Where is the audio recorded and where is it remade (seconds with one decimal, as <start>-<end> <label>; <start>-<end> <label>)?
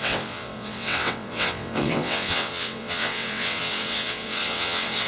0.0-5.1 remade